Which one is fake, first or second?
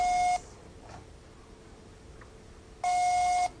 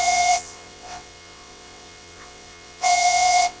second